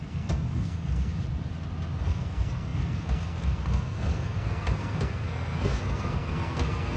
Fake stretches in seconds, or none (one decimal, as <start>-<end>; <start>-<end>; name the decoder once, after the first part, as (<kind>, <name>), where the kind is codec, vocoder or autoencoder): 0.0-1.1 (codec, SNAC); 2.0-7.0